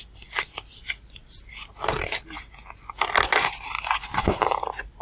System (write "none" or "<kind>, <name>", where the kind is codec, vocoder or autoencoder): none